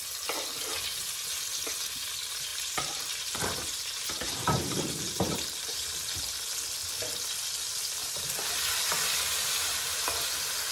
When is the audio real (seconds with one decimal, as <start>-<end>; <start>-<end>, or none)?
0.0-2.5; 6.2-8.0; 9.0-10.7